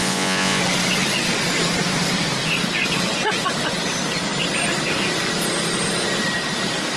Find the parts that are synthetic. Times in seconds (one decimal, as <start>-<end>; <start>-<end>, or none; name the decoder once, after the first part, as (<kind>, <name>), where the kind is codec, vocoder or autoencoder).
0.0-0.6 (vocoder, Vocos)